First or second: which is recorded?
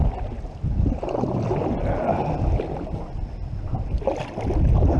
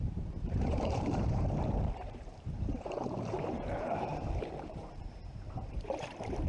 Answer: first